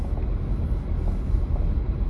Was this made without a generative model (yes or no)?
yes